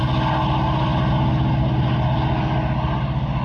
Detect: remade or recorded recorded